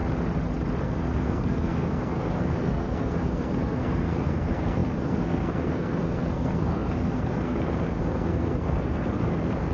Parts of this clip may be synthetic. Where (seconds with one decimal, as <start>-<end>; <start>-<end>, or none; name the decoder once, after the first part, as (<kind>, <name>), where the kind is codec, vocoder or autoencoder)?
0.8-9.7 (codec, SNAC)